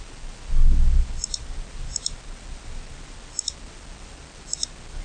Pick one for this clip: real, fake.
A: real